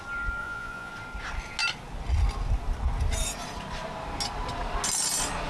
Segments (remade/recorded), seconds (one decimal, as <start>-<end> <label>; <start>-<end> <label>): 0.0-0.4 recorded; 0.4-0.9 remade; 0.9-5.5 recorded